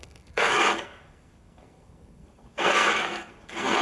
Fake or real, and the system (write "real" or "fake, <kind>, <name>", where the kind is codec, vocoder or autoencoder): fake, codec, SNAC